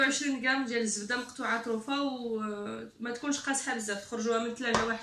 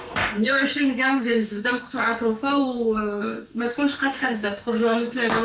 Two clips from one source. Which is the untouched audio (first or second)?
first